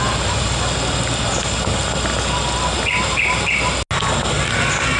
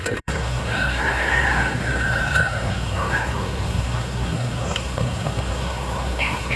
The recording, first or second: first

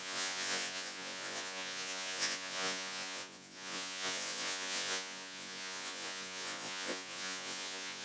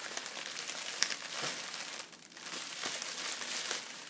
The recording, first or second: second